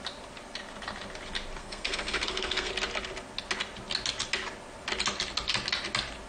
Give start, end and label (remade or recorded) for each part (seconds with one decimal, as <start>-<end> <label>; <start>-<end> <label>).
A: 0.0-1.6 recorded; 1.6-2.7 remade; 2.7-6.3 recorded